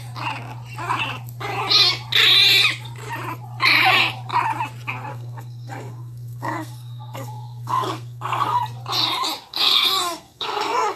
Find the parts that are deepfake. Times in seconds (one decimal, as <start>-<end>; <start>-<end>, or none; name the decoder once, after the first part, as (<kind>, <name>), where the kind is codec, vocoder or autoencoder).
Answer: 5.1-8.6 (codec, SNAC); 9.5-11.0